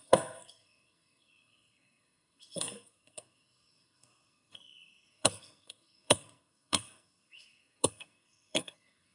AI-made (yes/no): yes